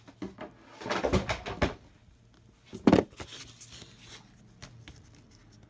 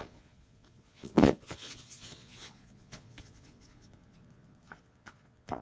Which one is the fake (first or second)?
second